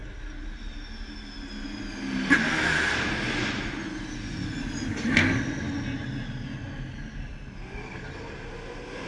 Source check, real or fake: real